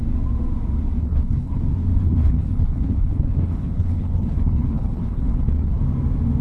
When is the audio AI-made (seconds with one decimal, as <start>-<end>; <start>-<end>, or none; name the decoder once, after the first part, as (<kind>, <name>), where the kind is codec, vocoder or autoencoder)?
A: 1.0-1.6 (codec, HILCodec); 2.0-5.8